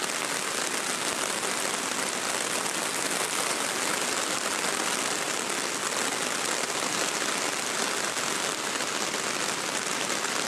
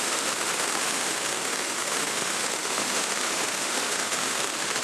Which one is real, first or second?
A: first